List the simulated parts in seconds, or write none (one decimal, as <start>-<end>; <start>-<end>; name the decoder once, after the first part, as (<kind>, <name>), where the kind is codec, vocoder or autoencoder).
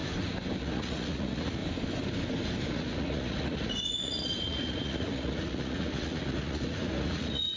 0.6-1.6 (vocoder, Vocos); 2.7-7.6